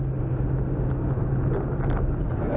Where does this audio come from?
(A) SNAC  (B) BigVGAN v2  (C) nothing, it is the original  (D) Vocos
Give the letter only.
C